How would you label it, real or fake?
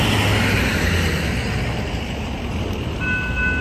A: real